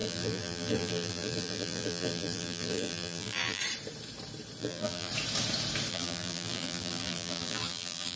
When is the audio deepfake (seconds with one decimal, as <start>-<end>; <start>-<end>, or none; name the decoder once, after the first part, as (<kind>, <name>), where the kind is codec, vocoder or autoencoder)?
0.0-3.6 (vocoder, BigVGAN v2); 4.6-5.1; 5.9-8.2